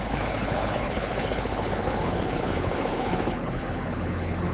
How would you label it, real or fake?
fake